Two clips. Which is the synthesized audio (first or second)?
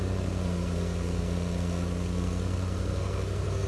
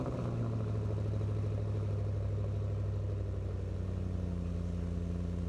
first